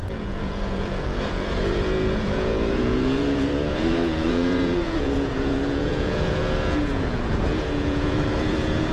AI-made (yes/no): yes